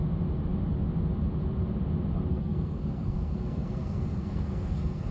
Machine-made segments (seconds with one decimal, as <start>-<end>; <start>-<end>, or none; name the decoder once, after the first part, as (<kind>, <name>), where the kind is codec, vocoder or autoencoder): 2.3-5.1 (codec, SNAC)